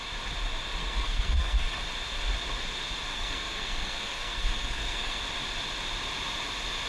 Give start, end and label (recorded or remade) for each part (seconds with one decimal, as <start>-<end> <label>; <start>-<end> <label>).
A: 0.0-0.8 recorded; 0.8-1.7 remade; 1.7-3.1 recorded; 3.1-5.2 remade; 5.2-6.9 recorded